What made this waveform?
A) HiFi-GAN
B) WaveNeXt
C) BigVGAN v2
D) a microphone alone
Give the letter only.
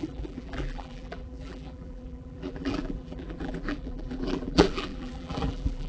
C